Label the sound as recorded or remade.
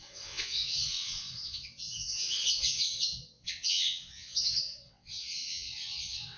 remade